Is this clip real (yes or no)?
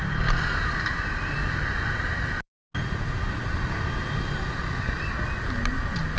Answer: yes